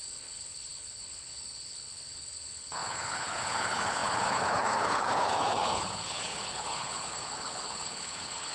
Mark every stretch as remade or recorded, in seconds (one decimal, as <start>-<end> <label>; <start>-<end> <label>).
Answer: 0.0-8.5 remade